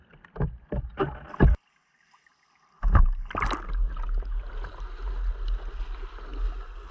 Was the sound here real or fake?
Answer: real